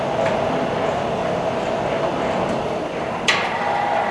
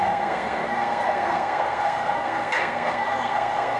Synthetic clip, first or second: second